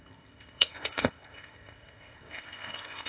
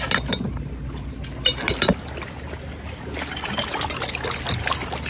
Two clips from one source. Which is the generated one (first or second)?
first